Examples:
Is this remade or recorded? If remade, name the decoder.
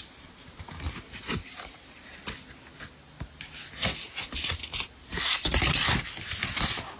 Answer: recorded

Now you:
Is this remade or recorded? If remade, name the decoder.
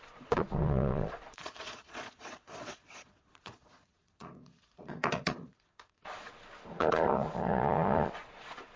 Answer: remade, vocoder, Vocos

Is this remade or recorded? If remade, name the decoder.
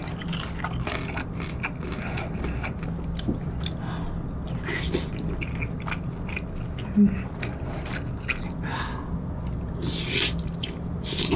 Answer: recorded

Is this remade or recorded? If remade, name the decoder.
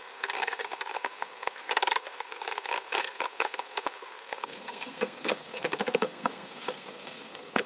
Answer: remade, codec, SNAC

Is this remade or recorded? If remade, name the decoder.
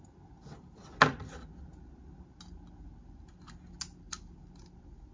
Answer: recorded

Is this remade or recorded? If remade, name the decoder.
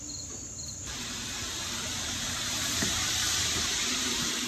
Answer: remade, vocoder, BigVGAN v2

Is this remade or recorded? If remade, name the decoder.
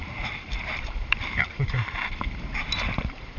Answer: remade, vocoder, BigVGAN v2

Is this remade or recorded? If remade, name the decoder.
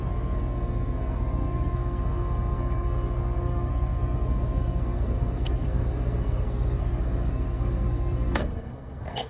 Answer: remade, codec, SNAC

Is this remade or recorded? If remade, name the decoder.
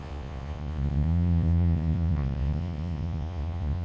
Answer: remade, vocoder, Vocos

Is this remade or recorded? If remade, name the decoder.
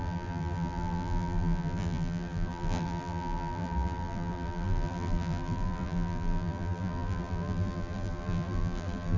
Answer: remade, vocoder, BigVGAN v2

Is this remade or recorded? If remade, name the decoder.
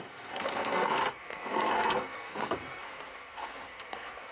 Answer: remade, codec, SNAC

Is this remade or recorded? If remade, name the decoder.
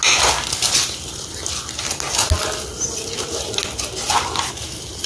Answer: recorded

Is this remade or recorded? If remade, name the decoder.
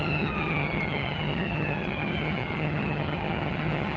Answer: remade, vocoder, HiFi-GAN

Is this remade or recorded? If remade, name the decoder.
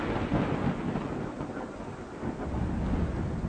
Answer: recorded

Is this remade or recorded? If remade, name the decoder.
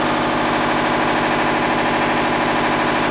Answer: recorded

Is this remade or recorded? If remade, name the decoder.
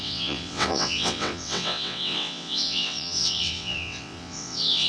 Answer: remade, vocoder, WaveNeXt